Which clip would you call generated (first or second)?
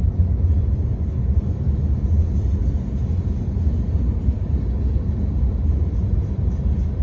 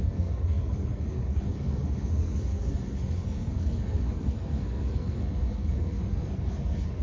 second